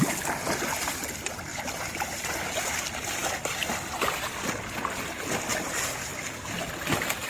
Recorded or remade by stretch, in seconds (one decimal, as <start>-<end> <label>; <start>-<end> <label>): 0.0-7.3 recorded